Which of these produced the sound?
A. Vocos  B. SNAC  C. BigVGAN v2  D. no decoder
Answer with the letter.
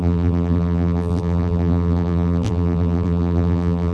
C